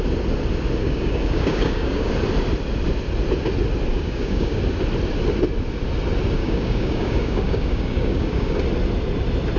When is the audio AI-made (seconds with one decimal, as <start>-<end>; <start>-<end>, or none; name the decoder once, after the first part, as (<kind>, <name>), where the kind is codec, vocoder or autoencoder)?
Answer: 0.8-2.1 (codec, DAC); 3.9-4.6; 6.4-8.6